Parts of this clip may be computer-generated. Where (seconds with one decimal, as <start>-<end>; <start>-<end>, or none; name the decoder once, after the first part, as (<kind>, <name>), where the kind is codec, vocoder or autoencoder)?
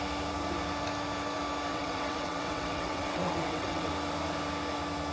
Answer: 1.7-3.9 (vocoder, WaveNeXt)